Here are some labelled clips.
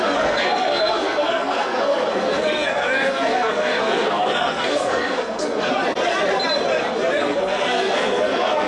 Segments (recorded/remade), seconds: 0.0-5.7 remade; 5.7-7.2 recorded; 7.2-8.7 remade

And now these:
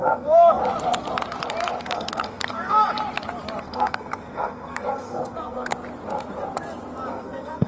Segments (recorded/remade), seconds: 0.0-0.6 remade; 0.6-1.8 recorded; 1.8-2.9 remade; 2.9-3.6 recorded; 3.6-5.7 remade; 5.7-7.1 recorded; 7.1-7.7 remade